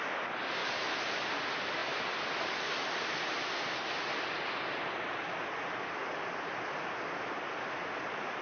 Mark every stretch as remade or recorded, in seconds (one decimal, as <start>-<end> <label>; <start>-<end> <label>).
0.0-0.6 recorded; 0.6-1.3 remade; 1.3-8.4 recorded